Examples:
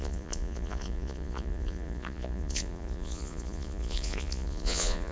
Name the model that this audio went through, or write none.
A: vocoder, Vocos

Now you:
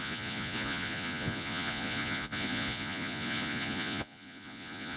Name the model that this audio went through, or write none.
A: vocoder, Vocos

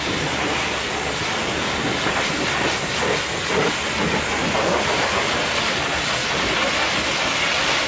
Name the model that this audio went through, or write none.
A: none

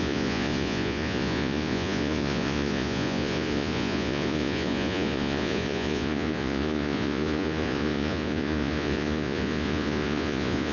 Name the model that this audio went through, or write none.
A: vocoder, Vocos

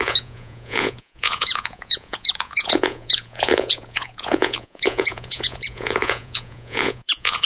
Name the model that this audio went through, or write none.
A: vocoder, Vocos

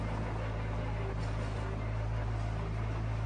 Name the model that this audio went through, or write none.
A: none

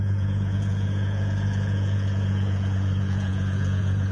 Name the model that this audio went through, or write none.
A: vocoder, Vocos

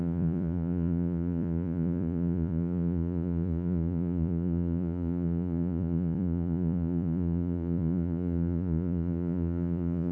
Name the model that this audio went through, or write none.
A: vocoder, Vocos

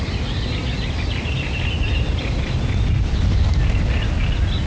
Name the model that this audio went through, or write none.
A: none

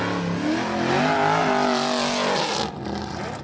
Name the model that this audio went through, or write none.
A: none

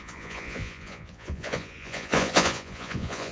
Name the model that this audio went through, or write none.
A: vocoder, Vocos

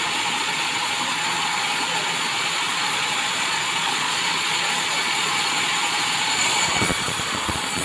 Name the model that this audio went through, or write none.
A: vocoder, Vocos